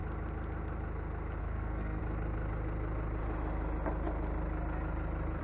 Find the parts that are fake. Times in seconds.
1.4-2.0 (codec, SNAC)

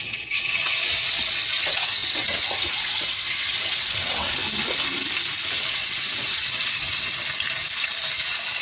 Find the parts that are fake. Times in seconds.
0.0-4.4 (vocoder, WaveNeXt); 5.7-7.2

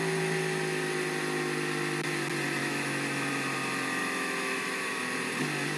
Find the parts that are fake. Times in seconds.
2.6-3.3 (autoencoder, DAC-VAE); 4.0-5.0

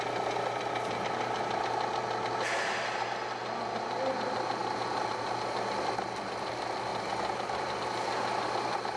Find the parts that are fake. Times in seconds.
6.9-7.8 (vocoder, BigVGAN v2)